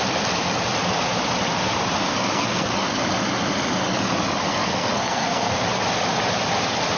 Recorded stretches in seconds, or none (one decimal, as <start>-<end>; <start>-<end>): 0.0-2.1; 2.7-4.5; 5.5-7.0